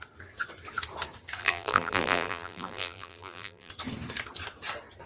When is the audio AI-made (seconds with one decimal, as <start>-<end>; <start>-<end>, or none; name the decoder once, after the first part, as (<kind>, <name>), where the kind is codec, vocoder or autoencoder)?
1.4-3.7 (vocoder, BigVGAN v2)